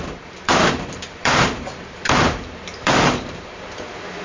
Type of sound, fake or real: fake